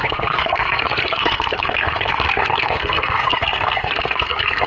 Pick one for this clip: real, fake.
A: fake